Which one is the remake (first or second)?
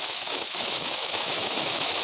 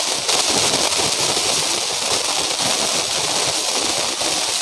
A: first